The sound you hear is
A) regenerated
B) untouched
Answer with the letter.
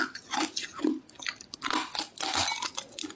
B